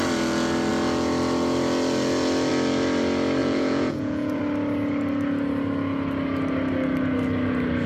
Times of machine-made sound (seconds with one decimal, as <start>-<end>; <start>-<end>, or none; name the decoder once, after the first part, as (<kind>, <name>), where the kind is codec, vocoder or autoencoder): 3.4-4.4 (vocoder, Vocos)